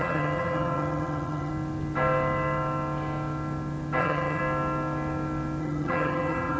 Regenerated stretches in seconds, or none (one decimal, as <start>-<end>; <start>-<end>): 0.0-1.5; 4.0-4.4; 5.6-6.6